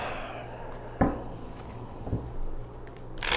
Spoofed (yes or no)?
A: no